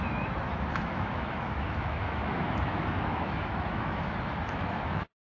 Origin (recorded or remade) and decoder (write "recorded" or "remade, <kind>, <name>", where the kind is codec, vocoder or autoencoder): remade, autoencoder, DAC-VAE